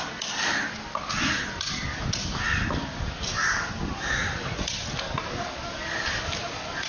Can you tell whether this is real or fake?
real